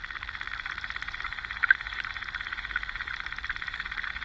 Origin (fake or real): real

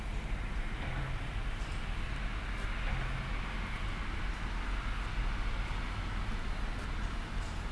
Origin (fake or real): real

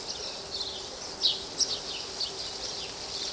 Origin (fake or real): real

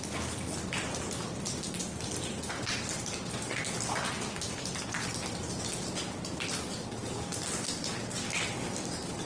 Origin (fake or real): real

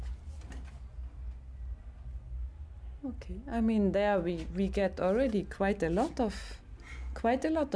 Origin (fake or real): real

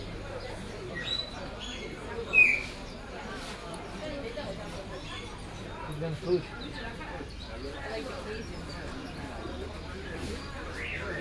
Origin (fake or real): real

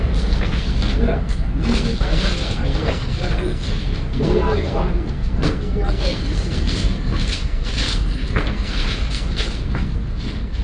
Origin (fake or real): fake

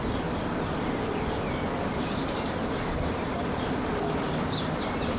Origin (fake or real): fake